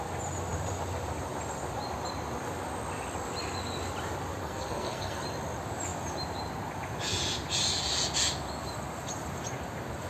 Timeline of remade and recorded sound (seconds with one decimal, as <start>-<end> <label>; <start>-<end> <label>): 0.0-4.4 recorded; 4.4-5.2 remade; 5.2-10.1 recorded